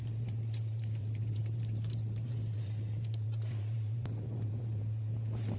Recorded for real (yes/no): no